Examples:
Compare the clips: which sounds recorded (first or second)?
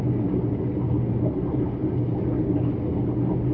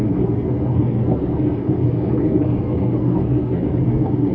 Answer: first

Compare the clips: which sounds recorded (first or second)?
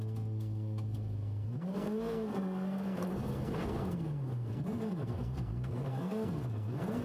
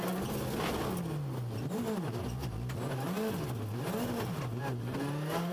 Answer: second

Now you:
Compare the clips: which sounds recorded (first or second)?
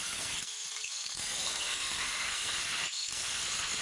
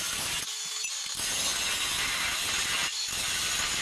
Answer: second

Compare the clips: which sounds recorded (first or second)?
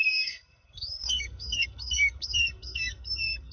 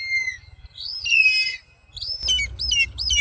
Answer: second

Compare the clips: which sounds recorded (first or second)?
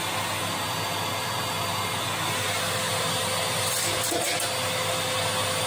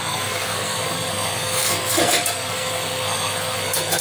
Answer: first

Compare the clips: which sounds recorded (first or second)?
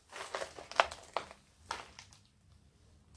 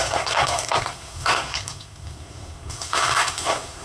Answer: first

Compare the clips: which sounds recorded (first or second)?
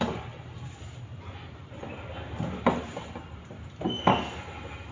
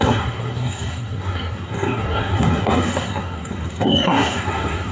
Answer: first